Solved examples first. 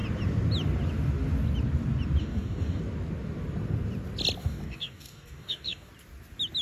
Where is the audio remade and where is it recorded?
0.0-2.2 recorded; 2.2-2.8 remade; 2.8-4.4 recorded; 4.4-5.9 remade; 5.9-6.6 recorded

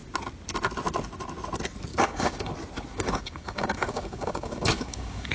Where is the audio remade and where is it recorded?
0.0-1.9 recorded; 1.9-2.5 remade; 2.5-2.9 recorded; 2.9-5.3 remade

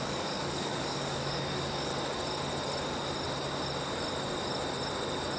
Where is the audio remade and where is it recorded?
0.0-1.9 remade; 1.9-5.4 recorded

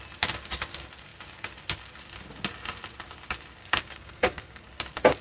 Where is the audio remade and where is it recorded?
0.0-3.6 recorded; 3.6-4.6 remade; 4.6-5.2 recorded

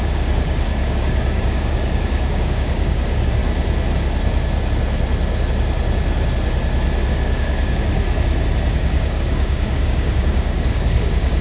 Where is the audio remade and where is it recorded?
0.0-3.4 remade; 3.4-7.1 recorded; 7.1-7.9 remade; 7.9-8.7 recorded; 8.7-11.4 remade